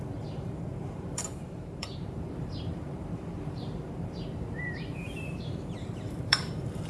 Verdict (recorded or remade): remade